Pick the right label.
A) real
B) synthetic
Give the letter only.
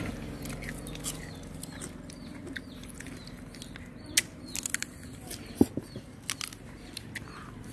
A